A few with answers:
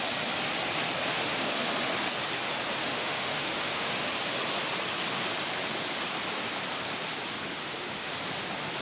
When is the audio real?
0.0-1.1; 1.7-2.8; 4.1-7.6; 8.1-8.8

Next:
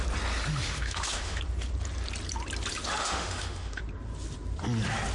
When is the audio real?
0.0-0.5; 1.4-3.0; 3.8-5.1

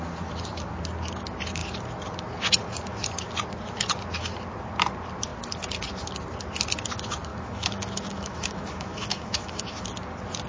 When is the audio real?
0.0-7.3; 9.8-10.5

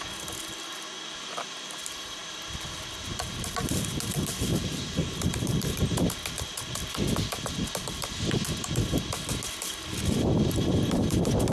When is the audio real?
0.0-4.5; 7.5-11.5

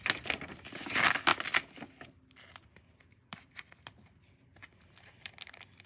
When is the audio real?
0.0-5.9